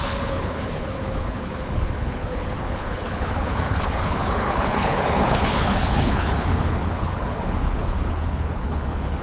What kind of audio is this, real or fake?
fake